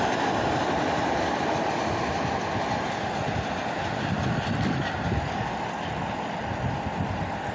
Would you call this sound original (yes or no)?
yes